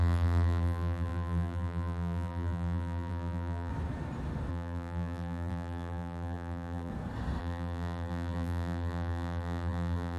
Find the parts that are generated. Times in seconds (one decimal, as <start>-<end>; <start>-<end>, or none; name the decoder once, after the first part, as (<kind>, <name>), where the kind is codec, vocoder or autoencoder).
0.0-3.7 (vocoder, BigVGAN v2); 4.5-6.9; 7.4-10.2